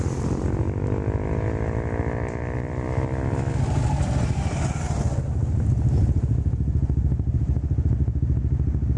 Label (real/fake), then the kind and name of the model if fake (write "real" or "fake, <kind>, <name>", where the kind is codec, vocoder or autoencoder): real